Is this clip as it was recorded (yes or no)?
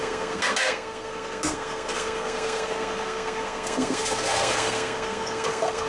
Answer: no